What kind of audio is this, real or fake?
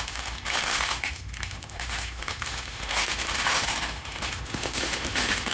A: fake